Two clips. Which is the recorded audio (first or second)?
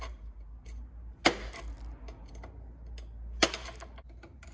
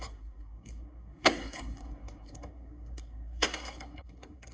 first